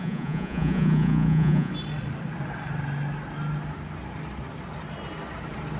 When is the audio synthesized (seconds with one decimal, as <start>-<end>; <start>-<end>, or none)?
0.0-1.7